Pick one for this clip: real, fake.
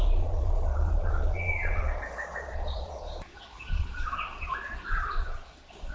fake